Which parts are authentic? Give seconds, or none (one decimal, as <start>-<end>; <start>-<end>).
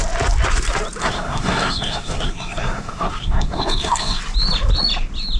0.0-1.0; 4.2-5.4